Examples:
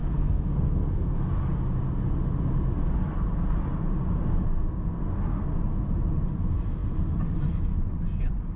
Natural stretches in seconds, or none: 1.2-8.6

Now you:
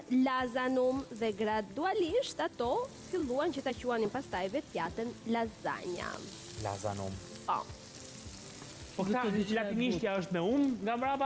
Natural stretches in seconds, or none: 0.0-3.2; 3.7-11.2

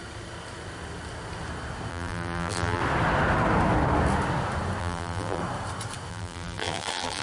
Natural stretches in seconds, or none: 0.0-1.9; 2.8-4.8; 5.4-6.1

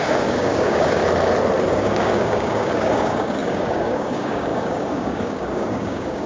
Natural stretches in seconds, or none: 1.0-1.7

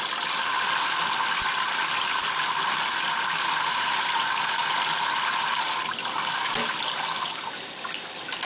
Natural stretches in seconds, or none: 0.0-8.5